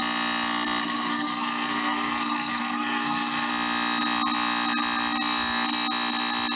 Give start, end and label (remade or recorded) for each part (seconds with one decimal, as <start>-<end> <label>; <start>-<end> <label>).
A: 0.0-0.8 recorded; 0.8-3.5 remade; 3.5-6.6 recorded